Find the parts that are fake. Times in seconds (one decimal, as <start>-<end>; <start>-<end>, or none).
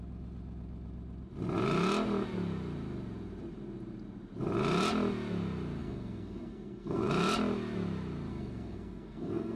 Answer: 5.8-7.1; 8.3-9.6